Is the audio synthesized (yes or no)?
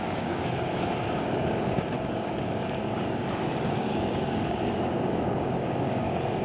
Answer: yes